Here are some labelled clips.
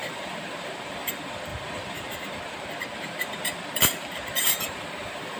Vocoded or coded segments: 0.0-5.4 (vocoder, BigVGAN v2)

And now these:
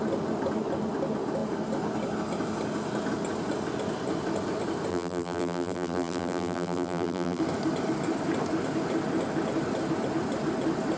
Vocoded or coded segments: 4.9-7.4 (vocoder, BigVGAN v2)

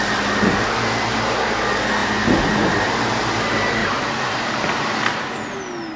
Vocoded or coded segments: 3.8-5.2 (vocoder, BigVGAN v2)